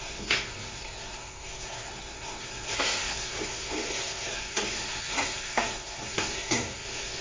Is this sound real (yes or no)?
no